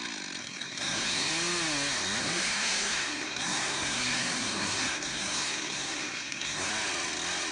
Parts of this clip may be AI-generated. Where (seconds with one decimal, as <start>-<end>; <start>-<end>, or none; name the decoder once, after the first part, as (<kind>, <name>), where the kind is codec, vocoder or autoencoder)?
0.4-1.3 (codec, SNAC); 2.2-6.7